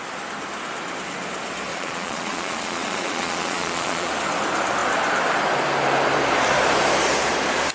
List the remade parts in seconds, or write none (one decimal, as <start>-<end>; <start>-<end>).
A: 1.7-4.1